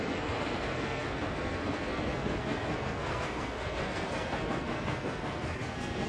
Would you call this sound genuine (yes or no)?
no